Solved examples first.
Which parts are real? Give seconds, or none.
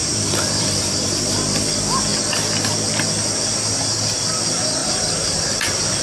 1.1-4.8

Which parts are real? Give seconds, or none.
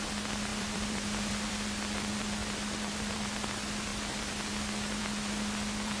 0.0-0.5; 1.5-6.0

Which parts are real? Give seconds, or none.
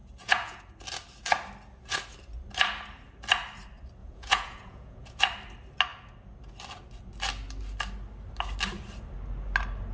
0.6-4.0; 5.2-9.9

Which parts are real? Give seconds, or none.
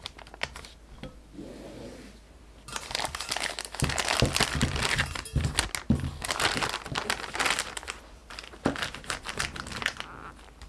0.0-8.2; 9.4-10.7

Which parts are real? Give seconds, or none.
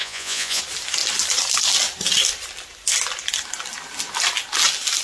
0.6-5.0